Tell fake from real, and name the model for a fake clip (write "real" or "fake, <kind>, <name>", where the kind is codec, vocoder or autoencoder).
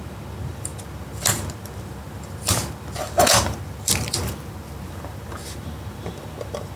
fake, vocoder, BigVGAN v2